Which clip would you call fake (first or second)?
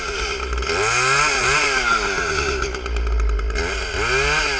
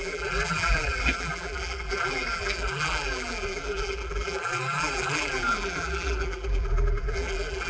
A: second